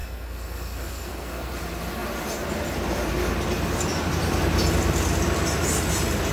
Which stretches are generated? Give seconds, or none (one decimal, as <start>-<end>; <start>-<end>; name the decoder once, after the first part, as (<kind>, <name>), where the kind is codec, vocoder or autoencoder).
0.0-1.5 (codec, SNAC)